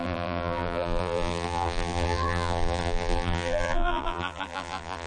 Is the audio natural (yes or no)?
no